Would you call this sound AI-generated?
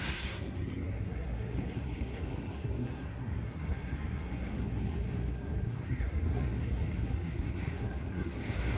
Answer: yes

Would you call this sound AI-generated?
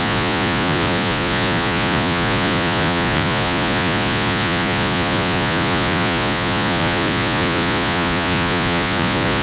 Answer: yes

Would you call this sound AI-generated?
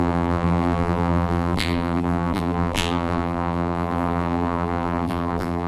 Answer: yes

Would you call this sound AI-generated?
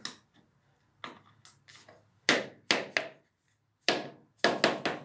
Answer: no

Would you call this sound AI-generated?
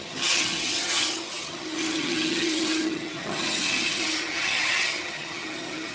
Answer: yes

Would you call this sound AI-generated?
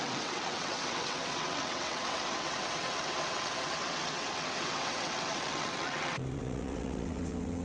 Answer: yes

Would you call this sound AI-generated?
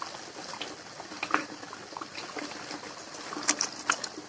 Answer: no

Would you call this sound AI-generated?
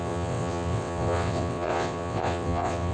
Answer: yes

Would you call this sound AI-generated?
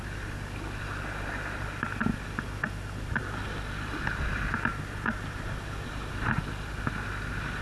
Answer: no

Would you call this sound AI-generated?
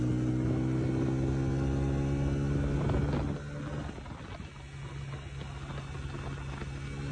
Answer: no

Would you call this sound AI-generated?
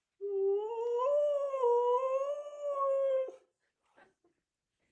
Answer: no